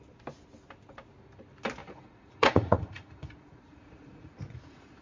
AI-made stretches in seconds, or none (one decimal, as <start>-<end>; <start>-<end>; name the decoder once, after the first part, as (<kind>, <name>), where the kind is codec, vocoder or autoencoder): 1.8-5.0 (vocoder, Vocos)